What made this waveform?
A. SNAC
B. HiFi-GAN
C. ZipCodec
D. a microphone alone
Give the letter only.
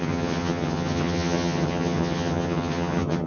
B